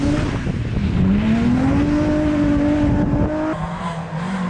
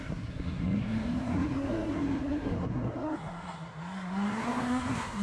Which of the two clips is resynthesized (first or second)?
second